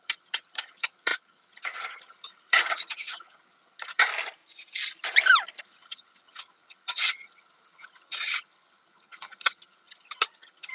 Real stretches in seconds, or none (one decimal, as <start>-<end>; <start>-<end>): 4.1-5.6